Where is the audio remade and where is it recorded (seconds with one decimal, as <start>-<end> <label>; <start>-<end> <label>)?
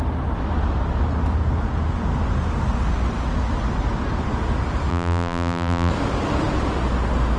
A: 0.0-4.9 recorded; 4.9-5.9 remade; 5.9-7.4 recorded